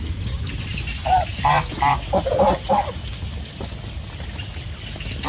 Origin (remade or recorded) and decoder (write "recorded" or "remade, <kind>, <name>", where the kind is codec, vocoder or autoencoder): recorded